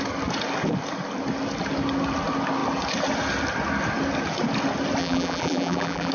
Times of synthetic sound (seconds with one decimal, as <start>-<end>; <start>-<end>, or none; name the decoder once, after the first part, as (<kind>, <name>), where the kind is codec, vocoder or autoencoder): 5.0-6.1 (vocoder, BigVGAN v2)